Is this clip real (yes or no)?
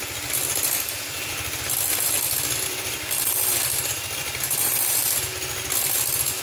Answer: no